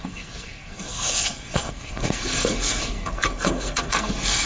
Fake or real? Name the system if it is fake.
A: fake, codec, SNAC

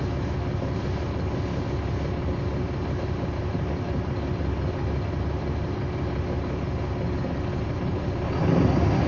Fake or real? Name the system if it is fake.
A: real